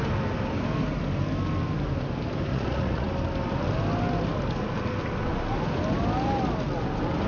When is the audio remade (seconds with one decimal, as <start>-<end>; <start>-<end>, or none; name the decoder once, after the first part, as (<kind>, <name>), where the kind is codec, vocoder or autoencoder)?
2.5-3.1 (vocoder, Vocos)